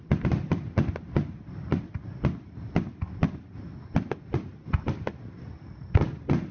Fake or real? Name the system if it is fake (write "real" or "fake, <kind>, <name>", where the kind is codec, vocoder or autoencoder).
real